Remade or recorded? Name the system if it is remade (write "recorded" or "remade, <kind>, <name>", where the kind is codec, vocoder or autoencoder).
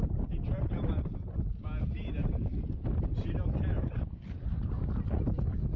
recorded